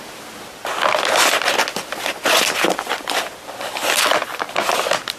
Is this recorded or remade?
recorded